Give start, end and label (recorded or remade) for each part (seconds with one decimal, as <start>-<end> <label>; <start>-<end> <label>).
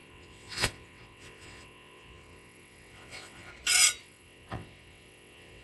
0.0-3.5 remade; 3.5-4.0 recorded; 4.0-5.6 remade